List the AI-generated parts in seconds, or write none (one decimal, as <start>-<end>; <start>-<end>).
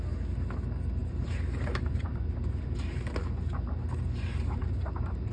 1.0-3.1; 4.6-5.3